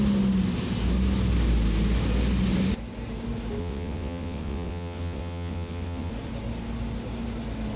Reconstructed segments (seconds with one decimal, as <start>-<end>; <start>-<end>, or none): 3.6-6.1